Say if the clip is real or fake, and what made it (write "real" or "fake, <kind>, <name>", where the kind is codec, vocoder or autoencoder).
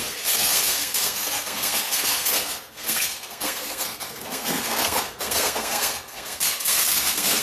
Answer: fake, codec, SNAC